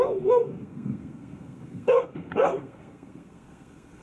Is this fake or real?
fake